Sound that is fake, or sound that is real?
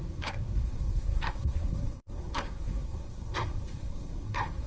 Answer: fake